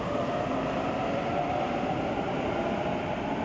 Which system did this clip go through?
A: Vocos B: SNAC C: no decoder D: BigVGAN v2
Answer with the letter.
C